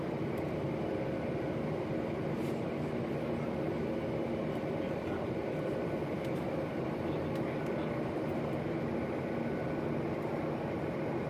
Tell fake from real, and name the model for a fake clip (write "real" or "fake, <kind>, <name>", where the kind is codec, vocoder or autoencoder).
real